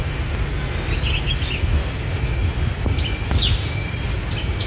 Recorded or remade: recorded